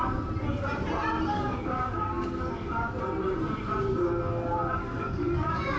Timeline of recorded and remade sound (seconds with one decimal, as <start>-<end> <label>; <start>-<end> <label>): 0.0-1.3 recorded; 1.3-2.9 remade; 2.9-4.8 recorded; 4.8-5.8 remade